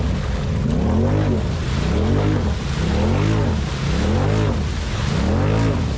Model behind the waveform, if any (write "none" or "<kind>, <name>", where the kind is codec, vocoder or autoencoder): none